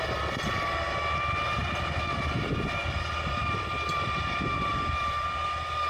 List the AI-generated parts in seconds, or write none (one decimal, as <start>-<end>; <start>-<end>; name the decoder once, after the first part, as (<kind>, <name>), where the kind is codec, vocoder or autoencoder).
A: 1.6-5.1 (vocoder, BigVGAN v2)